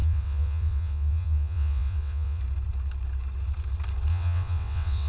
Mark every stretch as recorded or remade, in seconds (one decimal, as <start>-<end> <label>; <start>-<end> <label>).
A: 0.0-2.4 remade; 2.4-4.1 recorded; 4.1-5.1 remade